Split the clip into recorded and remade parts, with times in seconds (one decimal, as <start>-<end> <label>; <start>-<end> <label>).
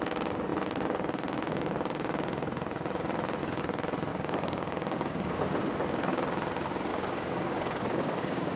0.0-4.1 recorded; 4.1-5.4 remade; 5.4-6.9 recorded; 6.9-8.6 remade